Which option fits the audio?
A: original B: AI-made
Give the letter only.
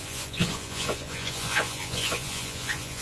B